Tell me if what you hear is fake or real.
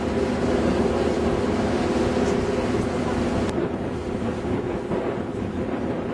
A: real